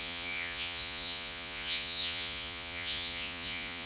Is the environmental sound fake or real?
fake